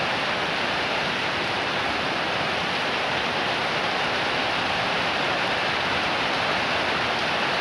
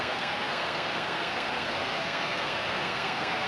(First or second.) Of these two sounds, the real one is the first